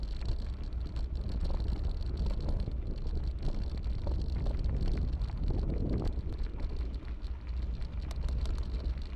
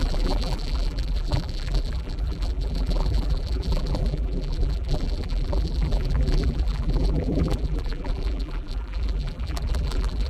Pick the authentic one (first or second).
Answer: first